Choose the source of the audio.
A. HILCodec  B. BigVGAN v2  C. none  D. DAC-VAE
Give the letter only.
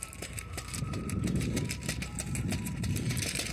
B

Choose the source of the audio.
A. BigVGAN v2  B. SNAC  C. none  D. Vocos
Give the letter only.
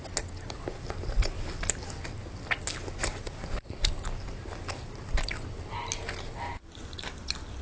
C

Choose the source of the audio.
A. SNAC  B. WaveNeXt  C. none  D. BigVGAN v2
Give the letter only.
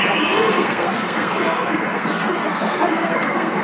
A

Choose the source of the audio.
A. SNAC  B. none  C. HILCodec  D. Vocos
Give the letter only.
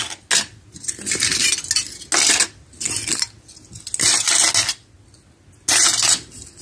B